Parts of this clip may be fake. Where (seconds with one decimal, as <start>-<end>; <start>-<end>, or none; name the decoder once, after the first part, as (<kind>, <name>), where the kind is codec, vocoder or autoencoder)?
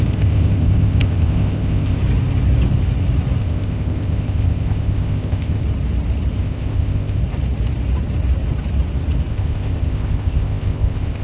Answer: 0.0-2.0 (codec, ZipCodec); 3.4-5.6; 6.4-7.2; 9.3-11.2